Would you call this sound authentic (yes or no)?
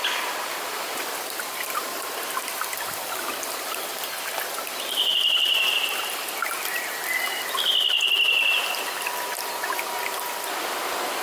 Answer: no